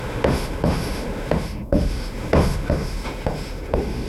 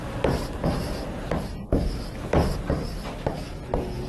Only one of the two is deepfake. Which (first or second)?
first